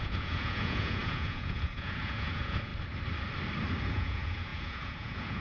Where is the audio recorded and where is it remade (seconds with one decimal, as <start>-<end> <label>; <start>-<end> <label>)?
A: 0.0-2.7 remade; 2.7-3.8 recorded; 3.8-5.4 remade